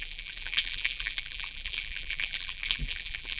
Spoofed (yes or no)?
yes